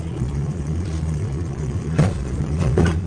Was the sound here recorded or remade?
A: remade